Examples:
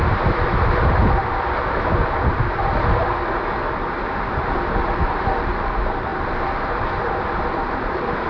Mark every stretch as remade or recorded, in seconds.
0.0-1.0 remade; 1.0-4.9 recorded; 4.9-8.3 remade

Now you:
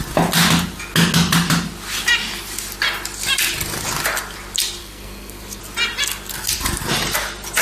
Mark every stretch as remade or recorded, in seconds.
0.0-4.8 recorded; 4.8-5.6 remade; 5.6-7.6 recorded

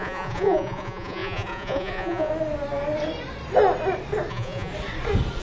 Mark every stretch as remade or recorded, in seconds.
0.0-2.3 remade; 2.3-4.3 recorded; 4.3-4.7 remade; 4.7-5.4 recorded

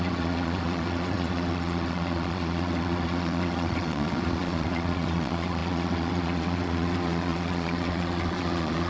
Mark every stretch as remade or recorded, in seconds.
0.0-8.9 remade

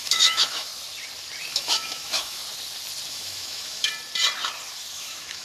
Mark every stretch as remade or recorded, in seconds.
0.0-0.7 remade; 0.7-1.5 recorded; 1.5-2.4 remade; 2.4-3.1 recorded; 3.1-3.9 remade; 3.9-4.9 recorded; 4.9-5.4 remade

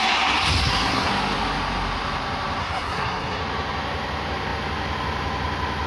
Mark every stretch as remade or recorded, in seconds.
0.0-0.6 recorded; 0.6-1.1 remade; 1.1-2.6 recorded; 2.6-3.4 remade; 3.4-5.9 recorded

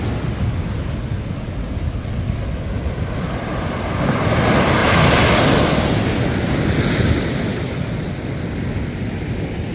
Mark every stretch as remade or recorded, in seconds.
0.0-9.7 recorded

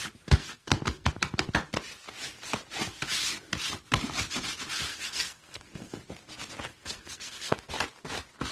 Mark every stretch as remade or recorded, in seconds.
0.0-0.4 recorded; 0.4-1.1 remade; 1.1-4.9 recorded; 4.9-6.0 remade; 6.0-6.7 recorded; 6.7-7.7 remade; 7.7-8.5 recorded